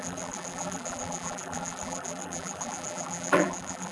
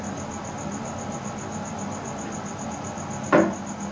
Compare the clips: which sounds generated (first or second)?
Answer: first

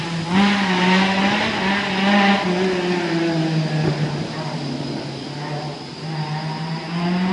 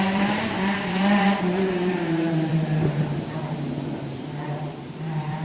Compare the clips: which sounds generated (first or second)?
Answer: second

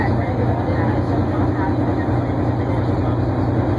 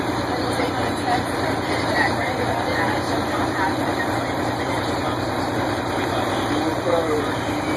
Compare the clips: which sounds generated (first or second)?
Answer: second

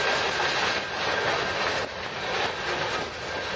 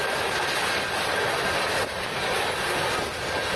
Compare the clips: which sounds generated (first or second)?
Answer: second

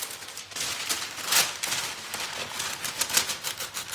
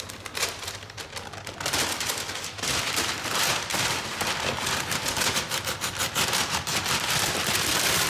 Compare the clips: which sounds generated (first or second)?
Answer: second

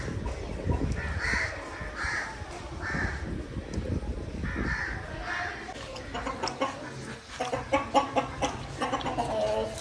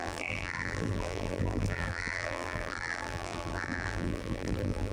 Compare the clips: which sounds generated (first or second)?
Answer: second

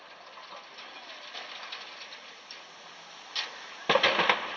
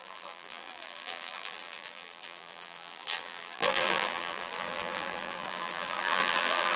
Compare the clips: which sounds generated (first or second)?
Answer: second